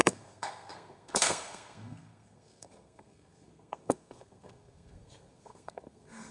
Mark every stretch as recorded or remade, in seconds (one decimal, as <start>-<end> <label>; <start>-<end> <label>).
0.0-6.3 remade